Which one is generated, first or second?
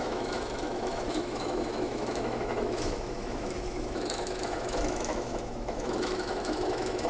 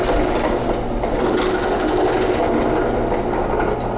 first